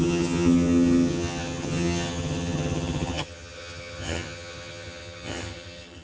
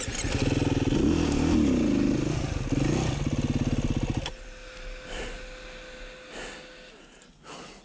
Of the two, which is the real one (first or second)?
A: second